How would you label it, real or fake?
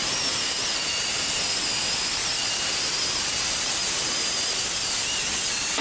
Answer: real